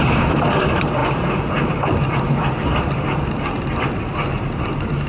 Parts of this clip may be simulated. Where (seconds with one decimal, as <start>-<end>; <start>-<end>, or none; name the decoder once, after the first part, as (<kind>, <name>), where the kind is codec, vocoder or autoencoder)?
none